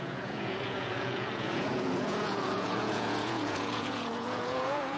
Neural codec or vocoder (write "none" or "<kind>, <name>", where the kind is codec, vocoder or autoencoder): vocoder, Vocos